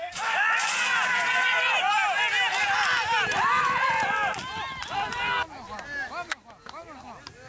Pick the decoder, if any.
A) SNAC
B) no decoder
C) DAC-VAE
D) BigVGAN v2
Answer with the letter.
B